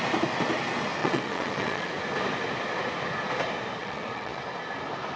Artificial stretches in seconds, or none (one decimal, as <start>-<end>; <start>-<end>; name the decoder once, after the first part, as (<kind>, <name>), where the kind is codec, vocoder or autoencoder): 1.0-1.9 (vocoder, Vocos); 3.8-4.4